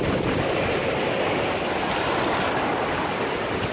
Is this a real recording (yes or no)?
yes